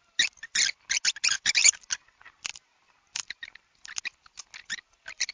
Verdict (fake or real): real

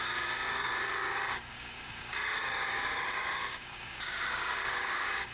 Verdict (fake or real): fake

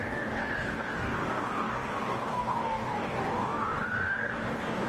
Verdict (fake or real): fake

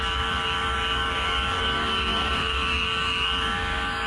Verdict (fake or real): fake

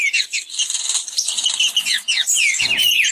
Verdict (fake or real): real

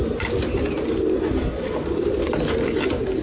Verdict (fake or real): real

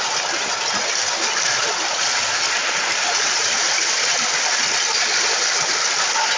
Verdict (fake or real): real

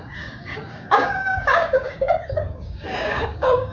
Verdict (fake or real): fake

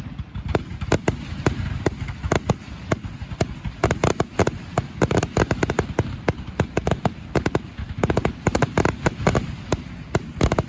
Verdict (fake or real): real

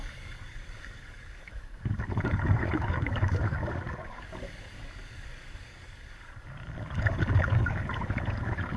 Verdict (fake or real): fake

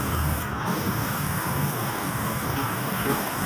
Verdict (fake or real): fake